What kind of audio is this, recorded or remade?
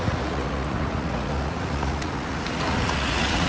remade